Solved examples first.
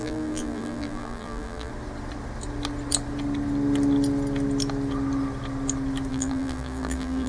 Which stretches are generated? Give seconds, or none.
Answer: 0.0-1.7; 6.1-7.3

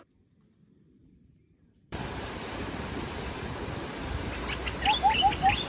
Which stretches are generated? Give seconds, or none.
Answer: 1.0-4.4

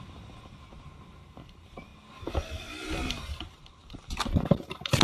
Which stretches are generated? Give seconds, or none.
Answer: 3.8-5.0

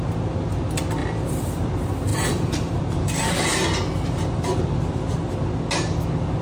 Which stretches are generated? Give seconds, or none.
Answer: 1.0-1.7; 2.1-5.3

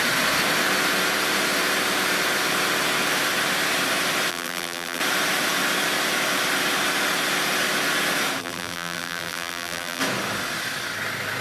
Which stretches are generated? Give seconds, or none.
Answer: 4.3-5.0; 8.4-10.0

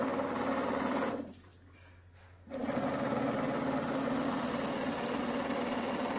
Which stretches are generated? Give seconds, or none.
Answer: none

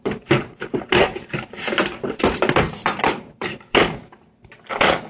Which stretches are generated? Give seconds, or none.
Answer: 0.0-3.5

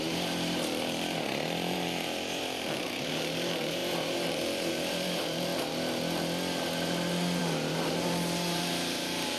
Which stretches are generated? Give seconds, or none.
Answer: 0.0-5.5; 7.4-9.4